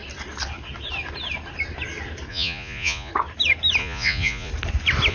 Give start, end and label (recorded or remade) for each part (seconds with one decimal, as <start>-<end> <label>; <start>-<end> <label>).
0.0-2.3 recorded; 2.3-3.1 remade; 3.1-3.8 recorded; 3.8-4.5 remade; 4.5-5.1 recorded